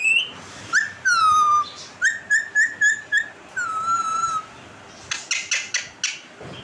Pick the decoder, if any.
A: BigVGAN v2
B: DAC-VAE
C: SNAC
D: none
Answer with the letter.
D